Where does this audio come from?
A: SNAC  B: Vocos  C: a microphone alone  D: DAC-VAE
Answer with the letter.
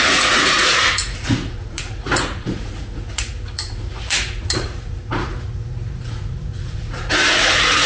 B